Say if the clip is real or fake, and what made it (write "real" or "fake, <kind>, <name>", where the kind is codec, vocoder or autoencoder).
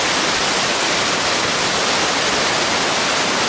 real